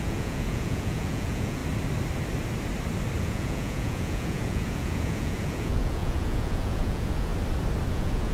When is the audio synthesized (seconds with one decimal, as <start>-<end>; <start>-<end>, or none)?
0.0-1.6; 3.2-7.3; 7.9-8.3